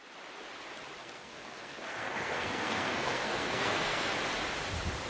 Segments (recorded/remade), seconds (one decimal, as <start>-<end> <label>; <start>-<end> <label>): 0.0-1.0 recorded; 1.0-4.1 remade; 4.1-5.1 recorded